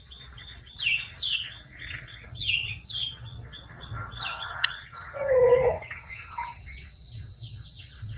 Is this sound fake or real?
fake